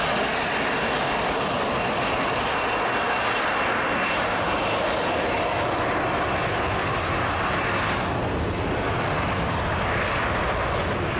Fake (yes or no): no